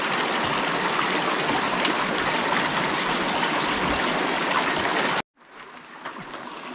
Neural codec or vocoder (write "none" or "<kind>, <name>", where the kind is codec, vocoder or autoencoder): none